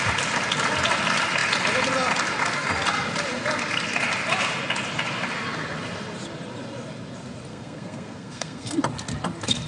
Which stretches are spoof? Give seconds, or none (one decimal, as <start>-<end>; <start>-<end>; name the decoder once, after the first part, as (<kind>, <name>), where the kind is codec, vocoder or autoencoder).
7.5-8.8 (codec, SNAC)